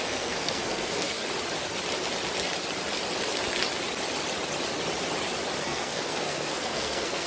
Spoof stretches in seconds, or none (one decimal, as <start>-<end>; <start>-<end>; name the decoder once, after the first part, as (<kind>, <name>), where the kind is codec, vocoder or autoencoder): 0.0-1.2 (codec, SNAC); 5.6-7.3